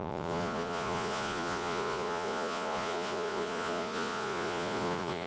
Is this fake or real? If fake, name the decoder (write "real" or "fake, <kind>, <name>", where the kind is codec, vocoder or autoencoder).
fake, vocoder, Vocos